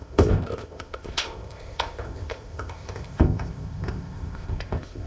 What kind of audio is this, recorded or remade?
remade